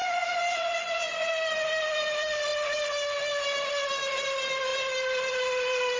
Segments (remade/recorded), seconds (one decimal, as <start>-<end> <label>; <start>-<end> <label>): 0.0-1.3 remade; 1.3-6.0 recorded